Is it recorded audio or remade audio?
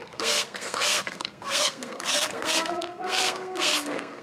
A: remade